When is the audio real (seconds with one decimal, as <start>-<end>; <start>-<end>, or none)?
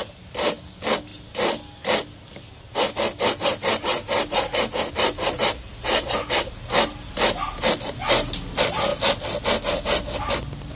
0.0-10.8